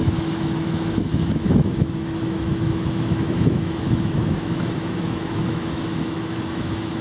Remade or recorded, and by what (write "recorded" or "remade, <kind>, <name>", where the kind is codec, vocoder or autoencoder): remade, autoencoder, DAC-VAE